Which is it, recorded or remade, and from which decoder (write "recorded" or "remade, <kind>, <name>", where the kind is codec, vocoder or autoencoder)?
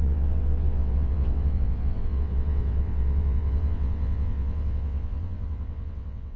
remade, vocoder, WaveNeXt